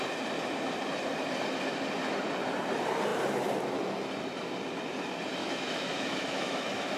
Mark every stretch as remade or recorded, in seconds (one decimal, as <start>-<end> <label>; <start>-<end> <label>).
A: 0.0-5.4 recorded; 5.4-7.0 remade